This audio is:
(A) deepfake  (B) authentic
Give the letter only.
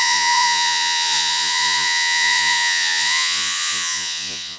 A